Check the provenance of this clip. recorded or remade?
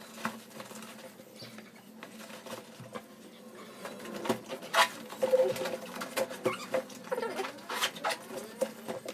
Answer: recorded